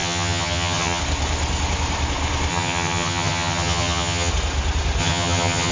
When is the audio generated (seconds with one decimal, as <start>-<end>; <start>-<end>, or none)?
0.0-1.0; 2.5-4.3; 5.0-5.7